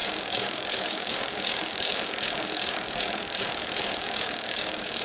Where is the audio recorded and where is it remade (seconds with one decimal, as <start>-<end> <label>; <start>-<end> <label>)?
0.0-5.0 remade